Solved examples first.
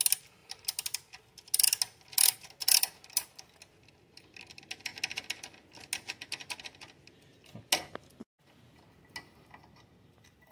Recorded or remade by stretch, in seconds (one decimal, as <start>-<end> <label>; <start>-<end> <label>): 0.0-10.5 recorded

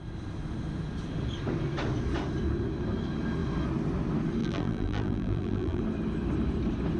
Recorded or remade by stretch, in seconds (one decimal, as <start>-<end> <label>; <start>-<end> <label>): 0.0-4.4 recorded; 4.4-5.8 remade; 5.8-7.0 recorded

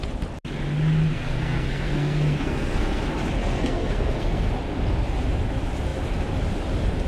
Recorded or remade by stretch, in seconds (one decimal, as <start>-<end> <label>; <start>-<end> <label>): 0.0-1.1 recorded; 1.1-3.0 remade; 3.0-3.4 recorded; 3.4-4.5 remade; 4.5-7.1 recorded

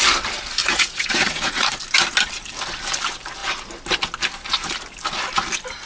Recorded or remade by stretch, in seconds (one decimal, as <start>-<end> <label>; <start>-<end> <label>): 0.0-0.6 recorded; 0.6-1.8 remade; 1.8-5.9 recorded

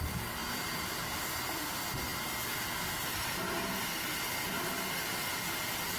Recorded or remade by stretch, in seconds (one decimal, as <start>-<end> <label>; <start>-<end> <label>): 0.0-0.4 recorded; 0.4-1.4 remade; 1.4-6.0 recorded